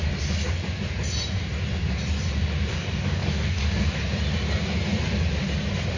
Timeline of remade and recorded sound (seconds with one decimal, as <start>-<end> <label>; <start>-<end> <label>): 0.0-2.7 recorded; 2.7-4.0 remade; 4.0-6.0 recorded